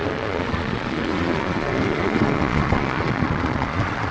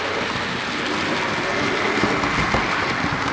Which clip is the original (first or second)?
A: second